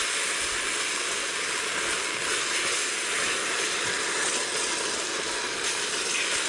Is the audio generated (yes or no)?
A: no